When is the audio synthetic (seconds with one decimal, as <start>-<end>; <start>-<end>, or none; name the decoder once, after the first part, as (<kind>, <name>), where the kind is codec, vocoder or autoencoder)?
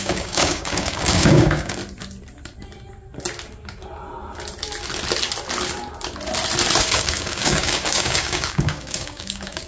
0.0-1.8 (codec, DAC); 6.8-9.7